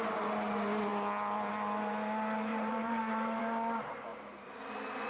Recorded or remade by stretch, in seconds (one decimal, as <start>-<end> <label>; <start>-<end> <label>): 0.0-2.5 recorded; 2.5-3.4 remade; 3.4-4.1 recorded; 4.1-4.6 remade; 4.6-5.1 recorded